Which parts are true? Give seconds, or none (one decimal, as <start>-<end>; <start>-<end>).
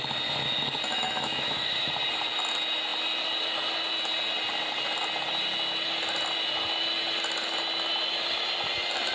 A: 0.0-0.9; 1.9-9.1